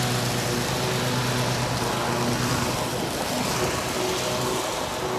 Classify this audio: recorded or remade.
recorded